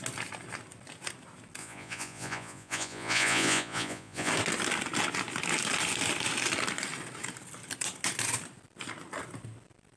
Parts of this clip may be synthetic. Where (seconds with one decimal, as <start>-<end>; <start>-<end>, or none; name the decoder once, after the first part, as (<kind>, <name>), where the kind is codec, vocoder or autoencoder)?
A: 1.6-4.3 (vocoder, Vocos)